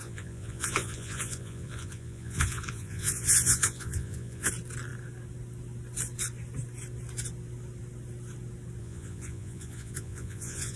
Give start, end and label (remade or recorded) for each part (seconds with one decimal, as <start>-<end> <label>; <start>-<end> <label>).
0.0-4.5 remade; 4.5-8.8 recorded; 8.8-10.8 remade